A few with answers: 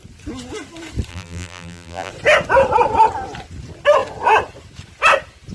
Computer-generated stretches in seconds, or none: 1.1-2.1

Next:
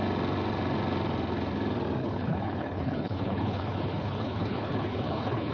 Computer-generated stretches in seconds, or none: 2.0-5.5

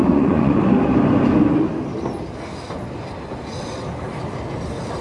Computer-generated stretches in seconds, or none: 0.0-0.6

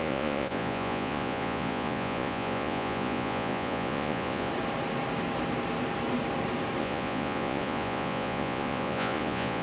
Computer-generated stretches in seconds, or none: 0.0-4.5; 6.8-9.6

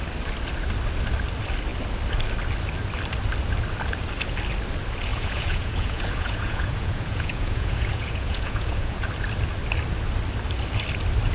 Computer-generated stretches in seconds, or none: 5.1-9.1

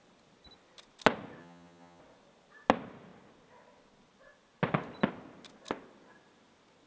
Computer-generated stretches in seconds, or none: 1.4-2.0

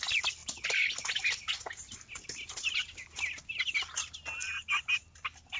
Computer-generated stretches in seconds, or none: none

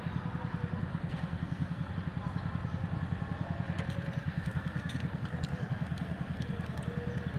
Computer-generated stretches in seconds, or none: 0.9-1.9; 4.2-6.8